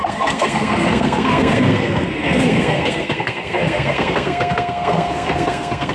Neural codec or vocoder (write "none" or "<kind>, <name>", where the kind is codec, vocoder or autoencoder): codec, SNAC